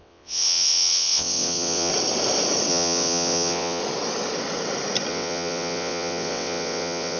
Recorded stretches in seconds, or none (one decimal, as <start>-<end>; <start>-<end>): 1.9-2.7; 3.8-5.1

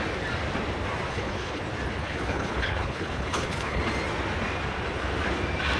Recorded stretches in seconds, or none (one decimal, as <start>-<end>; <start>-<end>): 0.0-1.1; 1.6-2.0; 3.8-5.8

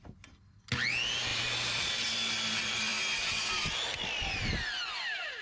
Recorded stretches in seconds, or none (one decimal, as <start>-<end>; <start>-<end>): 0.0-1.3; 1.9-5.4

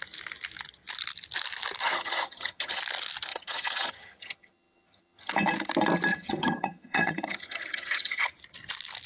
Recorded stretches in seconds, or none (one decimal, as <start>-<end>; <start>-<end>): 0.0-1.8; 2.8-3.3; 5.3-6.1; 8.3-9.1